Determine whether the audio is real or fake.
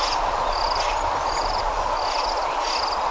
real